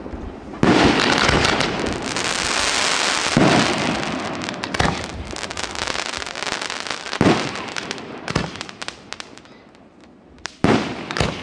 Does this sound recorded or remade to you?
recorded